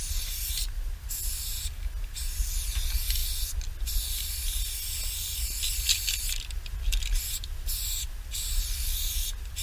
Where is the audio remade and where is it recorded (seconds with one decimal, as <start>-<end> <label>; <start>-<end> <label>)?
0.0-9.6 recorded